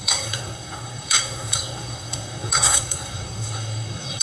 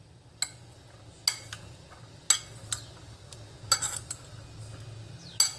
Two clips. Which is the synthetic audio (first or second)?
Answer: first